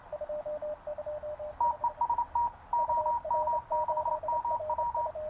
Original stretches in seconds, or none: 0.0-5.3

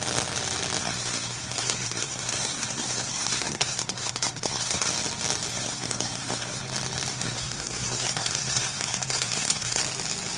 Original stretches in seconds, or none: 0.0-0.8; 4.9-5.5; 6.6-7.1; 9.8-10.4

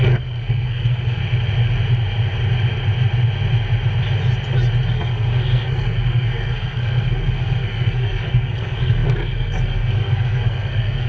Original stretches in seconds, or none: 1.2-4.9

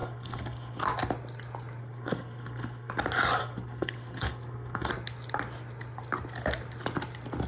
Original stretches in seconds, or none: 0.8-1.8; 2.9-3.4; 4.9-7.5

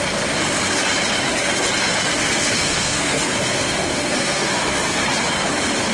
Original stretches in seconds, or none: 0.0-2.2; 5.0-5.9

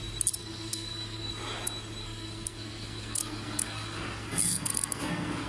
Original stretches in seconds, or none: 0.0-0.4; 1.3-2.0